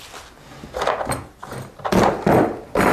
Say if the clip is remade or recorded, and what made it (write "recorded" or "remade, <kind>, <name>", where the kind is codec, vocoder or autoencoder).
recorded